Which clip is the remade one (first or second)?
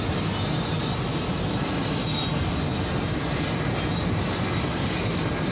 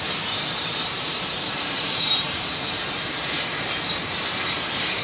second